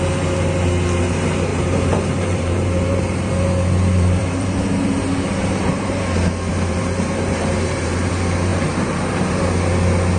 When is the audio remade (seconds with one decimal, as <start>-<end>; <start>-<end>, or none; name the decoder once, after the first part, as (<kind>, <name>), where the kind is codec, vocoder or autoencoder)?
1.5-6.0 (vocoder, BigVGAN v2); 6.5-8.1; 8.5-9.4